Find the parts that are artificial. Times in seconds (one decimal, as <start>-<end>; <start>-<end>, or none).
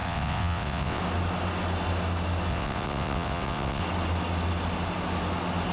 0.0-1.0; 2.5-3.8